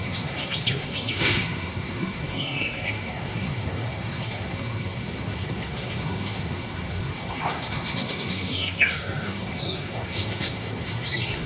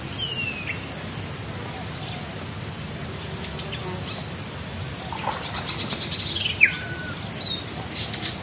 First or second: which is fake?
first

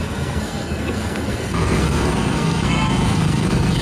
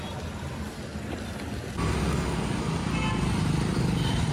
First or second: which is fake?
first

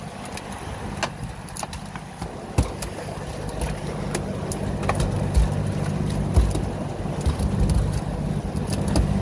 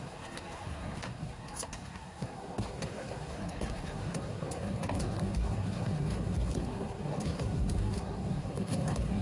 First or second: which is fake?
second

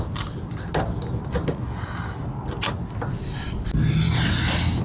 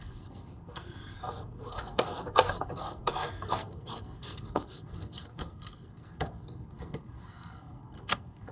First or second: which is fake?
second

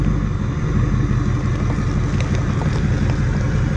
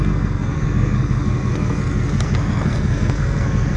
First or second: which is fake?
second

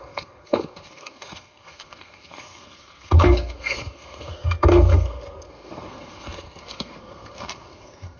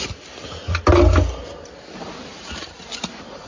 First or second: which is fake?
first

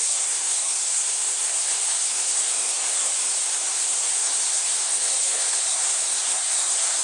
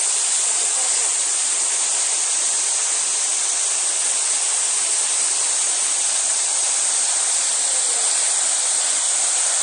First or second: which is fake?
first